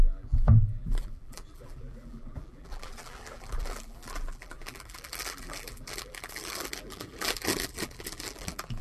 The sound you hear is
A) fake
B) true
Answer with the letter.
A